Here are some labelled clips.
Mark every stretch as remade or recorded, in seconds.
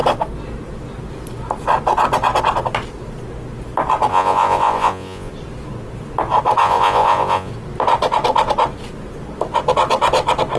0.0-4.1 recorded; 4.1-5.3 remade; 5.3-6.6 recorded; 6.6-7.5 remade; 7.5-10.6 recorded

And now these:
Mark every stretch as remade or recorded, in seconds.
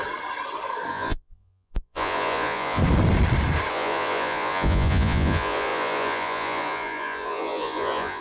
0.0-0.9 recorded; 0.9-2.8 remade; 2.8-3.7 recorded; 3.7-8.2 remade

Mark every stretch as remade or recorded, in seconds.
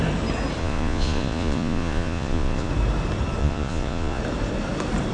0.0-0.6 recorded; 0.6-2.7 remade; 2.7-3.4 recorded; 3.4-4.2 remade; 4.2-5.1 recorded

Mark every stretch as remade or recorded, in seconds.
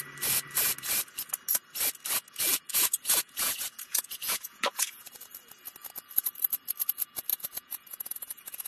0.0-2.7 recorded; 2.7-5.1 remade; 5.1-7.3 recorded; 7.3-8.7 remade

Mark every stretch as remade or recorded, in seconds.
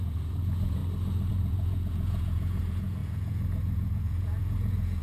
0.0-0.8 remade; 0.8-1.3 recorded; 1.3-5.0 remade